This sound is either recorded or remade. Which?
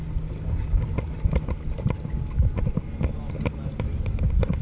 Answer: recorded